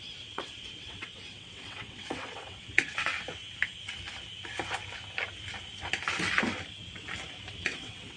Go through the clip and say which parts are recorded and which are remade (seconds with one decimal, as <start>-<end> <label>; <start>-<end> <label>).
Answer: 0.0-3.1 remade; 3.1-7.5 recorded; 7.5-8.2 remade

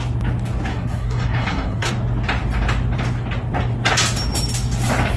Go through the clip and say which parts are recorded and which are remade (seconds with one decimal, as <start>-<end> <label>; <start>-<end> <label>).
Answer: 0.0-0.7 recorded; 0.7-1.9 remade; 1.9-5.2 recorded

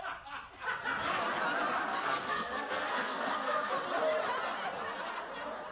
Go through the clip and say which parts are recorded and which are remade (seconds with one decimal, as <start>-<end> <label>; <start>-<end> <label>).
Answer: 0.0-1.9 recorded; 1.9-3.7 remade; 3.7-5.7 recorded